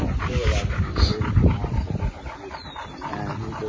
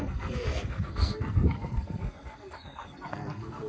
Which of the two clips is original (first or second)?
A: first